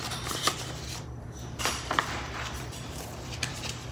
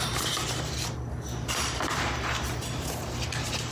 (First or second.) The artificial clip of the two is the first